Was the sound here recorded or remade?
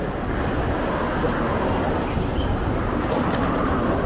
recorded